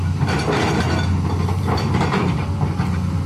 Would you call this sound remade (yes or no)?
no